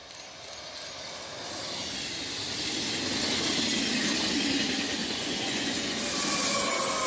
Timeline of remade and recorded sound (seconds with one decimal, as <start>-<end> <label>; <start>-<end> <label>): 0.0-5.0 recorded; 5.0-6.0 remade; 6.0-7.1 recorded